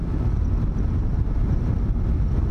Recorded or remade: recorded